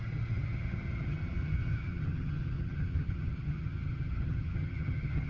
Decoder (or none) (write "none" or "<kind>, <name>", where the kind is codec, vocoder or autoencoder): vocoder, HiFi-GAN